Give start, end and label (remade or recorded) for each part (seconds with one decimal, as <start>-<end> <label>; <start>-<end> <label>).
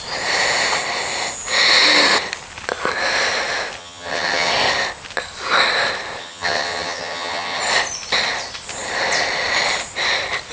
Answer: 0.0-3.8 recorded; 3.8-4.5 remade; 4.5-6.2 recorded; 6.2-7.6 remade; 7.6-10.5 recorded